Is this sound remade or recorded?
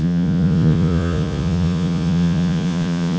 remade